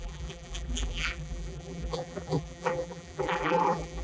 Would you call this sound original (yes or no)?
no